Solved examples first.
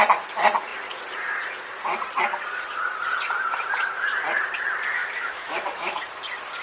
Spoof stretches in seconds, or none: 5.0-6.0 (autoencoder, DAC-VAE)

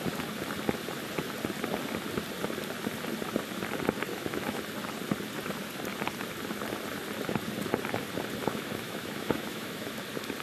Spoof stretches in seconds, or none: 4.1-4.6 (autoencoder, DAC-VAE); 8.4-10.0

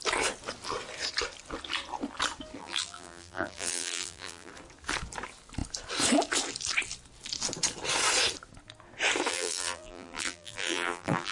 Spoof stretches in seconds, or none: 2.6-4.5 (vocoder, BigVGAN v2); 9.3-11.3

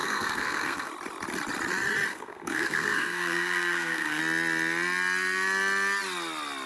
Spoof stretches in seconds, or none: 0.0-0.9 (codec, SNAC); 2.1-4.2

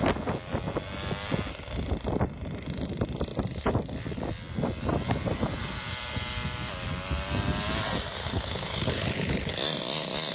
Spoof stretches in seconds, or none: 8.2-9.5 (codec, HILCodec)

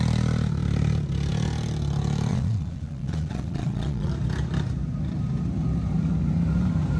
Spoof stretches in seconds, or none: 2.3-4.1 (vocoder, Vocos)